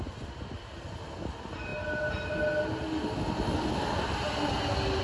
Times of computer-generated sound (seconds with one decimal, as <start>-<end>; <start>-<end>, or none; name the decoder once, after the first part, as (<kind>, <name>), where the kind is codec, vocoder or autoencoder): none